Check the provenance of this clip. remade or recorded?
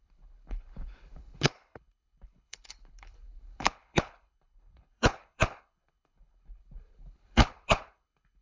remade